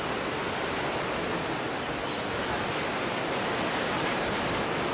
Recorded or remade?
recorded